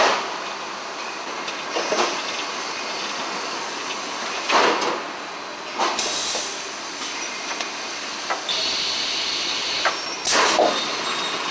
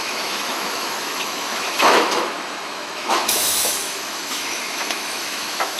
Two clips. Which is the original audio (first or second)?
first